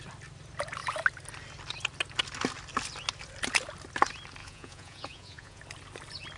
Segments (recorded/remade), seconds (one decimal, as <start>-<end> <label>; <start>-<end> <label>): 0.0-4.4 recorded; 4.4-5.6 remade; 5.6-6.4 recorded